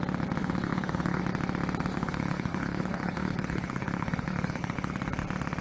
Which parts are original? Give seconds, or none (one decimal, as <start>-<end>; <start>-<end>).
0.0-0.4; 1.2-1.9; 4.9-5.6